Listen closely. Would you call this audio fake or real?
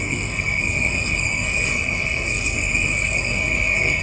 fake